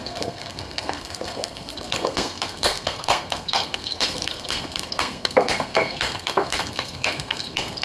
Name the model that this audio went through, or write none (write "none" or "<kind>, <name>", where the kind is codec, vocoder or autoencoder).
codec, SNAC